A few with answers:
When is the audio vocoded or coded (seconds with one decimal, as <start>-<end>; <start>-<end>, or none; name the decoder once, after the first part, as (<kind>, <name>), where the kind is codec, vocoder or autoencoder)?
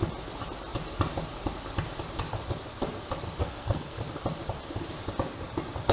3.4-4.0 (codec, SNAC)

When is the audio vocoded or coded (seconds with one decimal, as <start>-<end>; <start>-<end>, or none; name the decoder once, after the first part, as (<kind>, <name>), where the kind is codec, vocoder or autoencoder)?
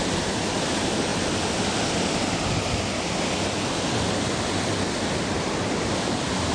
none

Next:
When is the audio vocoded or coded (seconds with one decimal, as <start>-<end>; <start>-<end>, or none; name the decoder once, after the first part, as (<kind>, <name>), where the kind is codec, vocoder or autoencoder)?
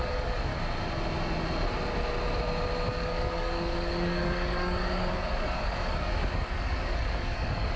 0.0-0.5 (codec, DAC); 2.9-7.8